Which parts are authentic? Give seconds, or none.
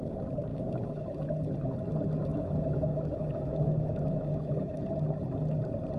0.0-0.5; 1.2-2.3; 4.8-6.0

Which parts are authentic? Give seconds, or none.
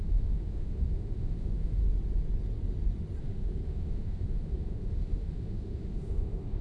1.8-3.2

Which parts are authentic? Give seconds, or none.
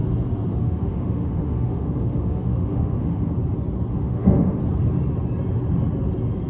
0.0-0.5; 3.3-3.9; 4.6-6.5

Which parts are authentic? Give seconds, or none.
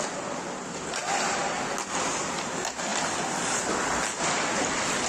0.0-5.1